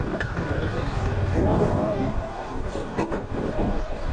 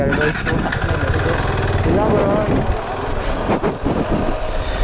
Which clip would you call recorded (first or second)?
second